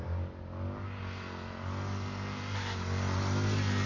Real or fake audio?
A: real